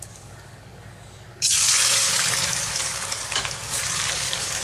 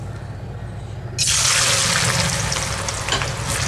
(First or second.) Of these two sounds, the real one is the second